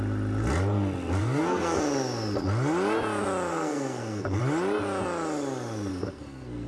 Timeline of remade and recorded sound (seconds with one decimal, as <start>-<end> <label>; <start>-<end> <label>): 0.0-1.2 recorded; 1.2-1.8 remade; 1.8-3.5 recorded; 3.5-4.4 remade; 4.4-5.9 recorded; 5.9-6.7 remade